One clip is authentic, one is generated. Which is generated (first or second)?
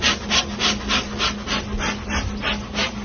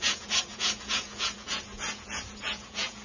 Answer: second